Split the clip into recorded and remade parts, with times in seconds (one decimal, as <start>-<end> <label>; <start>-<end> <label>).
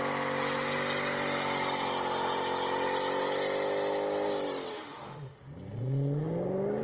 0.0-4.7 recorded; 4.7-5.4 remade; 5.4-6.8 recorded